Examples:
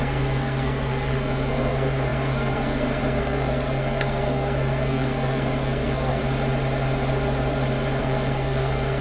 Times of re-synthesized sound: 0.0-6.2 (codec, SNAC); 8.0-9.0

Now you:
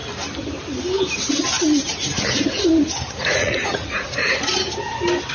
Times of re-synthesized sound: 3.2-4.2 (vocoder, Vocos)

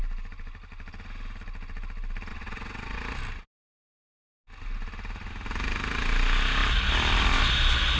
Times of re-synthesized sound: 2.3-3.0 (vocoder, WaveNeXt)

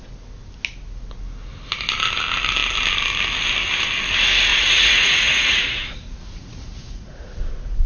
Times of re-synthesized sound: 4.5-7.4 (vocoder, Vocos)